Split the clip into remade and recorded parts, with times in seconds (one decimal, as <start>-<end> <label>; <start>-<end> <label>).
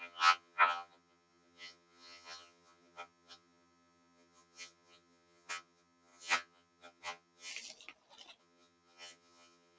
0.0-7.5 remade; 7.5-8.4 recorded; 8.4-9.8 remade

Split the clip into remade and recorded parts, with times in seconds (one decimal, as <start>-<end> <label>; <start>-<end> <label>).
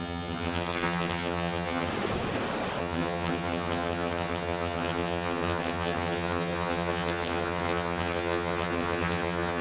0.0-1.9 remade; 1.9-2.8 recorded; 2.8-9.6 remade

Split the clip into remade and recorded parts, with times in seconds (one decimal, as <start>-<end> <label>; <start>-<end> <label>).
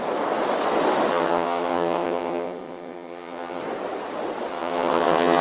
0.0-1.1 recorded; 1.1-3.6 remade; 3.6-4.5 recorded; 4.5-5.4 remade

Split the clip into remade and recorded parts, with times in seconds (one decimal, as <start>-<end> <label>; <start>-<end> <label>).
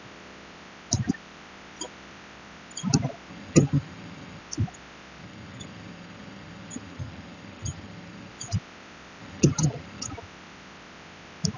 0.0-3.3 recorded; 3.3-4.4 remade; 4.4-5.2 recorded; 5.2-8.3 remade; 8.3-9.2 recorded; 9.2-10.1 remade; 10.1-11.6 recorded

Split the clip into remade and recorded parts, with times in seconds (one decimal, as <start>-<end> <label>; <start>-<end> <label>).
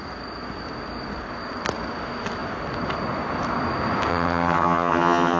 0.0-4.1 recorded; 4.1-5.4 remade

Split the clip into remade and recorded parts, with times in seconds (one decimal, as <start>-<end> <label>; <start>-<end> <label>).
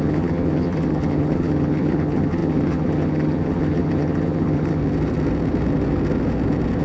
0.0-4.8 remade; 4.8-6.8 recorded